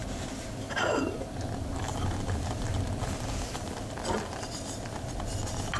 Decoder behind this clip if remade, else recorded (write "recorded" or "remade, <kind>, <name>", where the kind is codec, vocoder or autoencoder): recorded